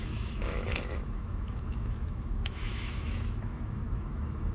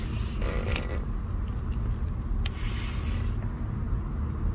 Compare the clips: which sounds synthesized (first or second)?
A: first